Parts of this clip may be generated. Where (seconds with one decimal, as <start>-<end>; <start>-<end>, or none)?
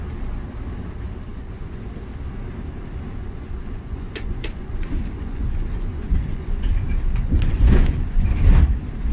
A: 1.3-1.9; 3.2-8.3